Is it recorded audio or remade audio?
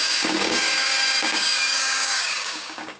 remade